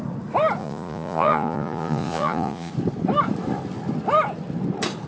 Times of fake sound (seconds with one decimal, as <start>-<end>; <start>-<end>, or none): 0.6-2.7